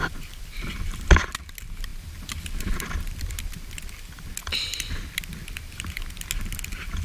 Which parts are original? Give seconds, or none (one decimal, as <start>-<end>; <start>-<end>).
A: 0.0-7.0